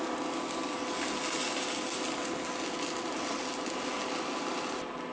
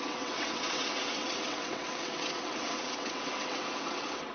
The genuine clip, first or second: first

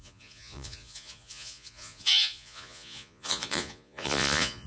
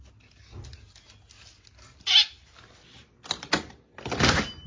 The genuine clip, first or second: second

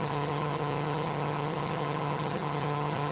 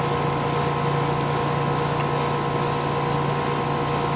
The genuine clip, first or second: second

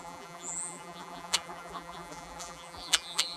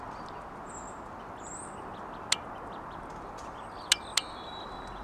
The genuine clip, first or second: second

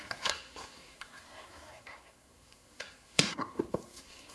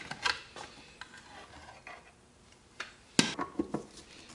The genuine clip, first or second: second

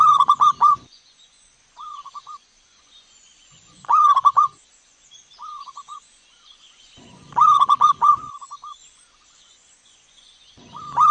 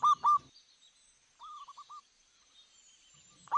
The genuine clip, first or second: second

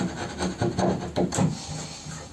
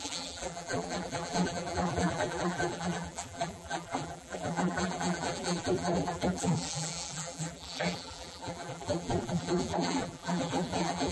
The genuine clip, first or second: first